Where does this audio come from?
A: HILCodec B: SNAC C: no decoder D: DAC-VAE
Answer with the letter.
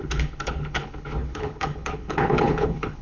A